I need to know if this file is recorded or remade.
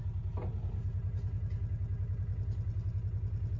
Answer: recorded